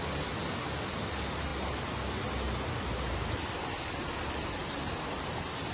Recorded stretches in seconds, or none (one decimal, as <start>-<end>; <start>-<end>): 0.0-5.7